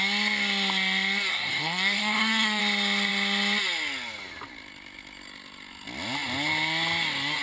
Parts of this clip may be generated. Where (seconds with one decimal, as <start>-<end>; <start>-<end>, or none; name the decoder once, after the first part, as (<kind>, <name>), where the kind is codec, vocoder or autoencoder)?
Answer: 1.3-2.6 (codec, SNAC)